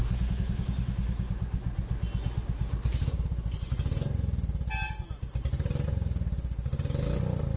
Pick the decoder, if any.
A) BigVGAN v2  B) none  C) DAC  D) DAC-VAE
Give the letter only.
B